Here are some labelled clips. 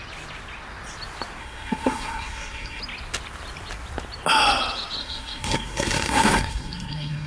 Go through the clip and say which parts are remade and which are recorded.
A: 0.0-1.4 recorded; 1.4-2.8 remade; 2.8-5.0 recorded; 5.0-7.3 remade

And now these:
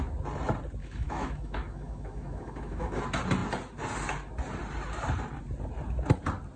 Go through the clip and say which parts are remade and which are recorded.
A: 0.0-0.8 recorded; 0.8-3.0 remade; 3.0-6.6 recorded

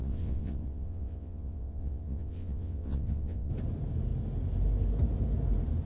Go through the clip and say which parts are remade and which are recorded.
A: 0.0-3.5 remade; 3.5-5.9 recorded

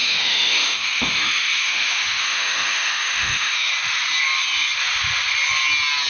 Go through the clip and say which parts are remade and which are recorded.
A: 0.0-3.7 remade; 3.7-6.1 recorded

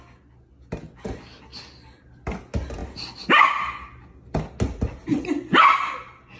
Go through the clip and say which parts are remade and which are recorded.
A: 0.0-6.4 recorded

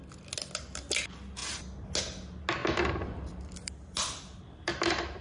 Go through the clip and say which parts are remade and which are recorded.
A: 0.0-2.6 recorded; 2.6-5.2 remade

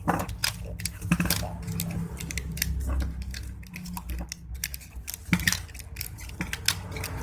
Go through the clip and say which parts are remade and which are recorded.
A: 0.0-7.2 recorded